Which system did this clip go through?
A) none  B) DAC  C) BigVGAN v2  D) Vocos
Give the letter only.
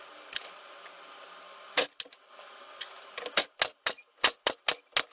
A